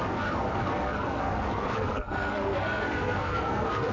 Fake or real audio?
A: fake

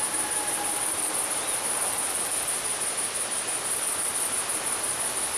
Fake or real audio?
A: real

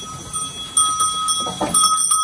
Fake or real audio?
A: real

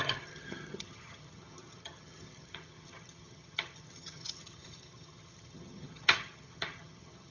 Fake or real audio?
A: fake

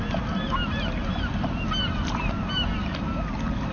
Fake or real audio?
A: real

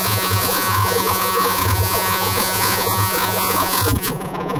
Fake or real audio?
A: fake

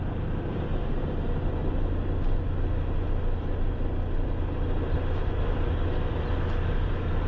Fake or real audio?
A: real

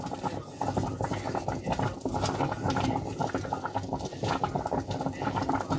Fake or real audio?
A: real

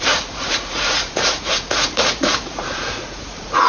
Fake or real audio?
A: fake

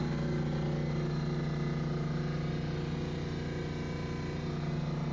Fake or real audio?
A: real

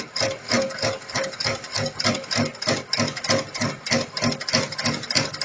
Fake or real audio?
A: real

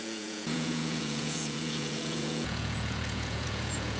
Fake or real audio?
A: fake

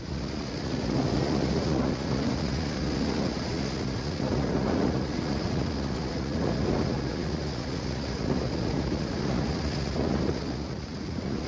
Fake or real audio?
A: fake